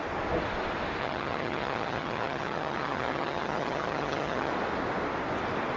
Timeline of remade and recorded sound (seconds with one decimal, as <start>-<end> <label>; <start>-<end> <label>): 0.0-1.0 recorded; 1.0-4.5 remade; 4.5-5.8 recorded